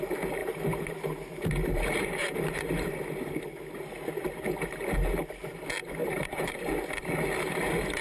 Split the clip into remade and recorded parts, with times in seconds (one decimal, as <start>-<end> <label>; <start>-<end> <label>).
0.0-0.4 recorded; 0.4-2.9 remade; 2.9-6.0 recorded; 6.0-6.7 remade; 6.7-8.0 recorded